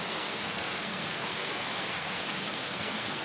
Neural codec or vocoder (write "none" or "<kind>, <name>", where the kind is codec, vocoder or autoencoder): codec, SNAC